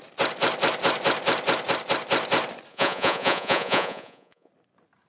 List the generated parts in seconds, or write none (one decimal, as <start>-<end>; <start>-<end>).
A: 2.7-4.5